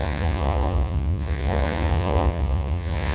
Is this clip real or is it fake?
fake